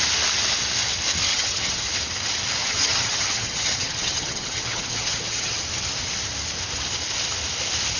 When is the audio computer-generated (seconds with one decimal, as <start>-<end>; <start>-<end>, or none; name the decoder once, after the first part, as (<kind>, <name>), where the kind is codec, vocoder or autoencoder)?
1.3-1.9 (vocoder, HiFi-GAN); 2.6-5.6